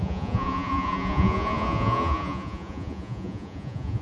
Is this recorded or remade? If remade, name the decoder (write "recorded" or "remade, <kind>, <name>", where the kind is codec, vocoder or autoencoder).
remade, vocoder, Vocos